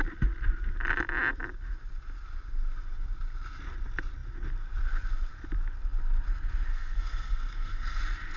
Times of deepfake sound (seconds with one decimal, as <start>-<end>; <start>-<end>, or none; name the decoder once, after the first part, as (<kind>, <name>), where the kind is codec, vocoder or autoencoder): 6.7-8.0 (codec, SNAC)